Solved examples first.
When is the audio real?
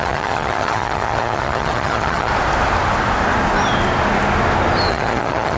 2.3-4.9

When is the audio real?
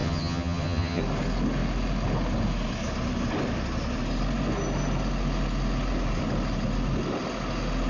1.0-7.9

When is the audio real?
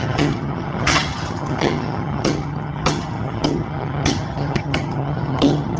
none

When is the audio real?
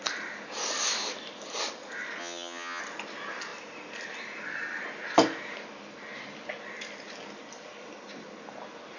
0.0-2.2; 2.8-9.0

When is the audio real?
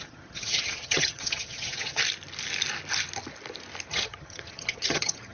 2.0-3.9